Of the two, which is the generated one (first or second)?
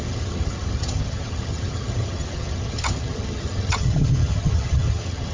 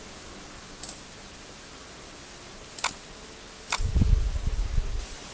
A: first